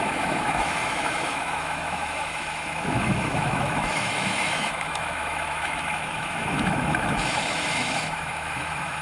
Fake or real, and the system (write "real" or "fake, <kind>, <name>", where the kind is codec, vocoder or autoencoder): fake, autoencoder, DAC-VAE